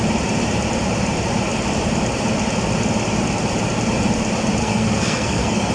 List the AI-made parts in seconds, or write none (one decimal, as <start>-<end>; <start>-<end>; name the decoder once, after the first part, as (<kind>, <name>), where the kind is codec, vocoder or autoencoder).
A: 4.6-5.7 (codec, SNAC)